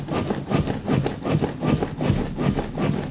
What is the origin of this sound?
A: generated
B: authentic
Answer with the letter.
B